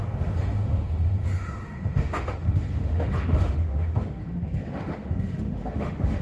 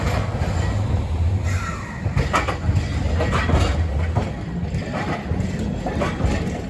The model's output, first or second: first